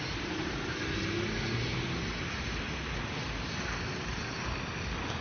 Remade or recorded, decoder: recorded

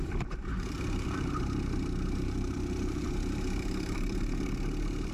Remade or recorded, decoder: remade, vocoder, BigVGAN v2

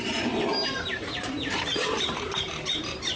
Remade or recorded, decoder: remade, vocoder, BigVGAN v2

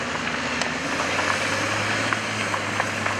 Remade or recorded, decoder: recorded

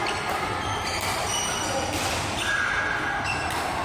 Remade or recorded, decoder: recorded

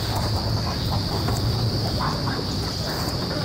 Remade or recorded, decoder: recorded